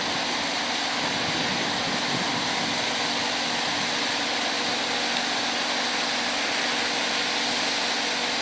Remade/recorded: recorded